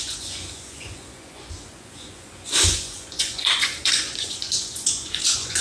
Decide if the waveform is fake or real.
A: fake